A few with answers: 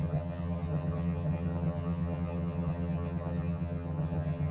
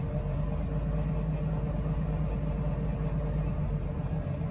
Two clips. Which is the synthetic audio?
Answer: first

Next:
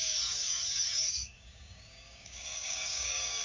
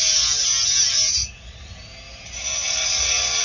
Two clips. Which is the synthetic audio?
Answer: first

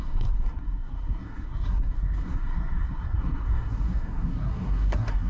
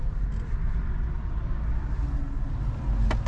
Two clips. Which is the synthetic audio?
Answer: first